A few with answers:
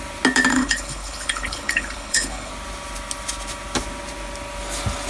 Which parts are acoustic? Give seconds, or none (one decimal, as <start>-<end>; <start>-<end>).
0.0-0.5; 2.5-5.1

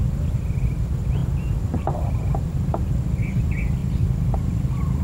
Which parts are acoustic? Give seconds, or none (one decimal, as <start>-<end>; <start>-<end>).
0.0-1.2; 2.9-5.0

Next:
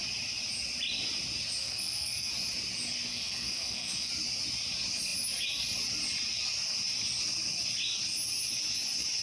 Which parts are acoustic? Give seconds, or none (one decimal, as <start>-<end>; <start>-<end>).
0.0-1.6; 2.3-3.1; 4.1-9.2

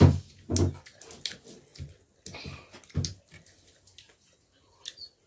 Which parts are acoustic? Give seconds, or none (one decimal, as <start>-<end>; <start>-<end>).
0.0-5.3